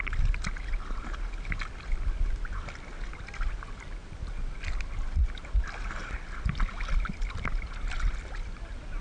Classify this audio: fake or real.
real